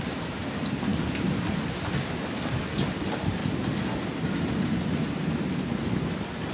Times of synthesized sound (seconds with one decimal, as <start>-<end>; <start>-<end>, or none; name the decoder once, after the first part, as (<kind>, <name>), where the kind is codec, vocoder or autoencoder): none